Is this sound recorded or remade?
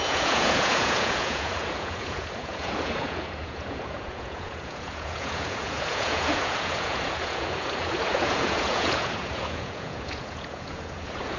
remade